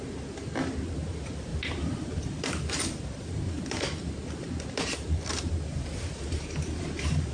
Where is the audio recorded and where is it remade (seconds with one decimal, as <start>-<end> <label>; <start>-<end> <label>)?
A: 0.0-1.5 recorded; 1.5-5.4 remade; 5.4-7.3 recorded